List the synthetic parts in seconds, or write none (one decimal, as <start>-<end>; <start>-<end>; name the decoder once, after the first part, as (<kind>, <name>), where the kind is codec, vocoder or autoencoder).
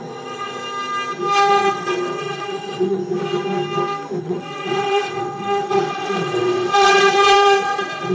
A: 0.0-0.6 (vocoder, WaveNeXt); 1.5-3.0; 4.2-8.1